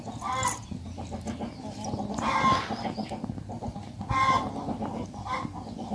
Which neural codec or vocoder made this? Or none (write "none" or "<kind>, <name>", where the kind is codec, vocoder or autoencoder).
none